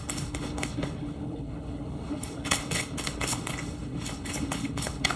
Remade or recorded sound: remade